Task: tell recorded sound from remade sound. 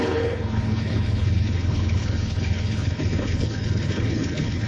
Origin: remade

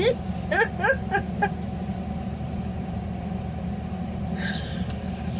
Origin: recorded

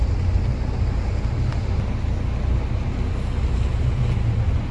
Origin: recorded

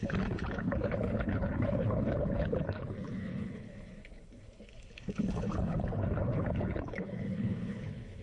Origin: remade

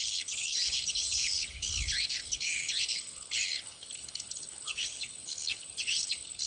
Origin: remade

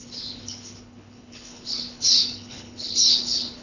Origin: remade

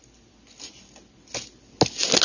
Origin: recorded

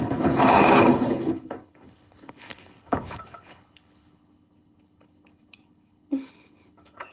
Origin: remade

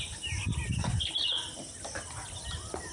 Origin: recorded